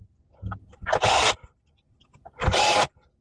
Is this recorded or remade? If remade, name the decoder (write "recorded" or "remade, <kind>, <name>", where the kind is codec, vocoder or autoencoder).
recorded